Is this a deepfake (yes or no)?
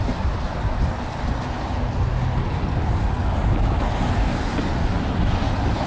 no